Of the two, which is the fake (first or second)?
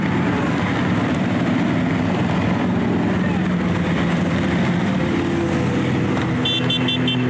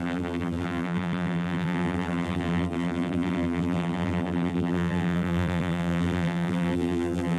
second